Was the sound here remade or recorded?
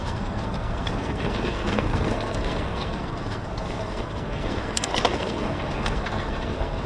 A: remade